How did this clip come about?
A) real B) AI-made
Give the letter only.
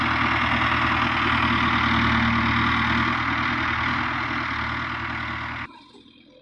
A